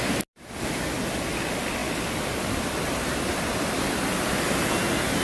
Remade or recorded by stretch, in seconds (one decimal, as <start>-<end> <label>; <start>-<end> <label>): 0.0-5.2 recorded